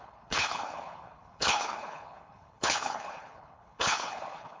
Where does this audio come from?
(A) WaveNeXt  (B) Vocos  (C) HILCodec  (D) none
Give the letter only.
C